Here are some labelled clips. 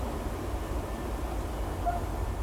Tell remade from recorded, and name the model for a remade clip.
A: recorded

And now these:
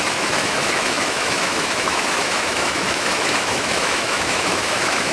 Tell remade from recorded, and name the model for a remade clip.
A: remade, autoencoder, DAC-VAE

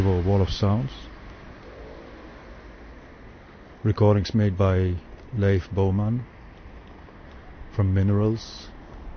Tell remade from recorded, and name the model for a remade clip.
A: recorded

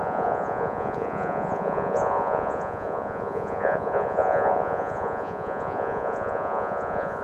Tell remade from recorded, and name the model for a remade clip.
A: remade, vocoder, Vocos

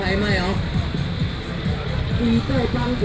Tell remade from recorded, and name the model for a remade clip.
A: recorded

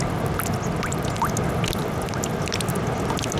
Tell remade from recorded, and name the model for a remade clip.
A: recorded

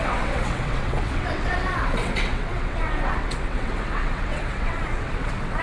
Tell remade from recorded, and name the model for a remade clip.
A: remade, vocoder, WaveNeXt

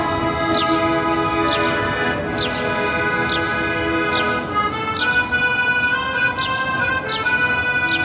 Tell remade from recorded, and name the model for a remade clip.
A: recorded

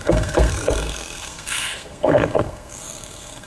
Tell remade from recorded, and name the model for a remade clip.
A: remade, codec, SNAC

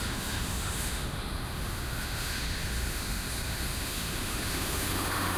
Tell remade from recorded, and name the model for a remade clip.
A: remade, autoencoder, DAC-VAE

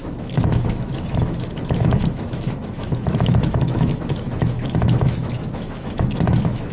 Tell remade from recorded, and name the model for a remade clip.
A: remade, autoencoder, DAC-VAE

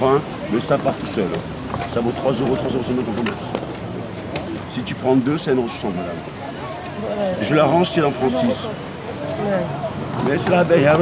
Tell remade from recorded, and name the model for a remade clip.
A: recorded